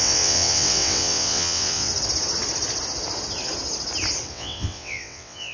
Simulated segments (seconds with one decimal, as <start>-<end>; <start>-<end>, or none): 0.0-1.9; 4.3-5.5